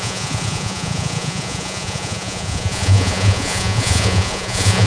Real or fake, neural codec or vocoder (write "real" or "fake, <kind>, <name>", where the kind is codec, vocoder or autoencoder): fake, vocoder, Vocos